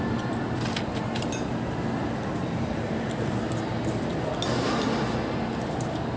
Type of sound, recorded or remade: recorded